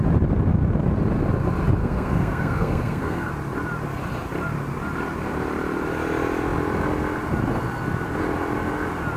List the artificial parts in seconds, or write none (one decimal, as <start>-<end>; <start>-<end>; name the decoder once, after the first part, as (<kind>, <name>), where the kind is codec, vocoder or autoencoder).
1.8-3.3 (codec, SNAC)